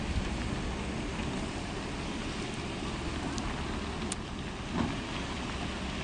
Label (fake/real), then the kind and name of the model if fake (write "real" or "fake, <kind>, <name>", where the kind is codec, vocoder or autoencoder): real